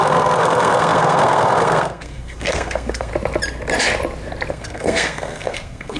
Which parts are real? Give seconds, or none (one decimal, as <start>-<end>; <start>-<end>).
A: 3.1-4.5

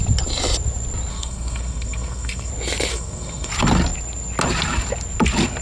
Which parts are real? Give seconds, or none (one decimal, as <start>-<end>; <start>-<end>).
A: 0.0-1.1; 2.5-2.9; 3.5-5.6

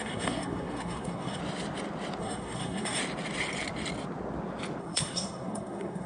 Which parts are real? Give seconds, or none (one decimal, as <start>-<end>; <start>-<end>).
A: 1.4-2.2; 3.0-4.8

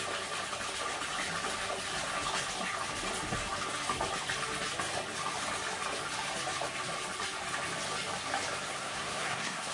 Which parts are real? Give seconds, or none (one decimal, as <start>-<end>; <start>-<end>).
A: 0.0-8.7